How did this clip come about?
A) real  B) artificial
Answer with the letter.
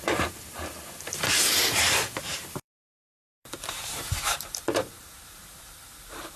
B